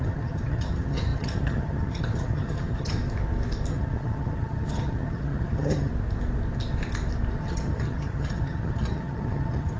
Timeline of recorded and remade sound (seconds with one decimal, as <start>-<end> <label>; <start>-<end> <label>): 0.0-3.0 remade; 3.0-3.7 recorded; 3.7-5.9 remade; 5.9-7.4 recorded; 7.4-9.8 remade